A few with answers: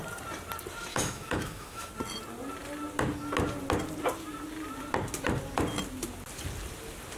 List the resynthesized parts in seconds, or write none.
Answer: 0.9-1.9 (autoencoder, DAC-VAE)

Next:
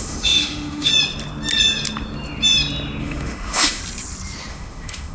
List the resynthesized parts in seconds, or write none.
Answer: 0.0-0.9 (autoencoder, DAC-VAE); 3.0-3.8; 4.5-5.1

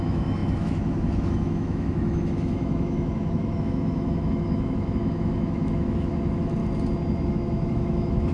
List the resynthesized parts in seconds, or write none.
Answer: 0.0-6.6 (autoencoder, DAC-VAE); 7.3-8.3

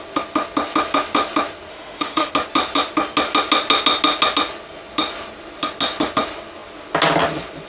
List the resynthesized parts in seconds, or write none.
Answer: 1.7-2.3 (autoencoder, DAC-VAE)

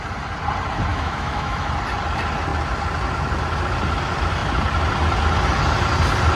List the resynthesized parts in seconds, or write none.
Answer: 0.9-1.7 (autoencoder, DAC-VAE)